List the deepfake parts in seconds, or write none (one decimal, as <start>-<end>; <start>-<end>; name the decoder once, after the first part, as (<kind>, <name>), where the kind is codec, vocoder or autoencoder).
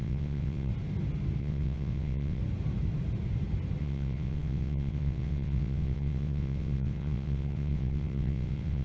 0.0-0.7 (vocoder, WaveNeXt); 1.4-2.4; 3.8-8.8